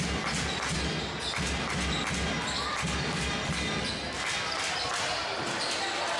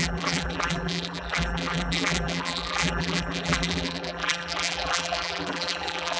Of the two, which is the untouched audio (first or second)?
first